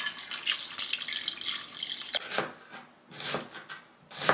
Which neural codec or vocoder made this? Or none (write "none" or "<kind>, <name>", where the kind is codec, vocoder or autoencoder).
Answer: none